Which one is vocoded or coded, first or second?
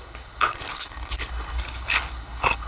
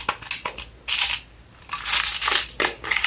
first